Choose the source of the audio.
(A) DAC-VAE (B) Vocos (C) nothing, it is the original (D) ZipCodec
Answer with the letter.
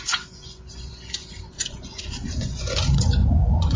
B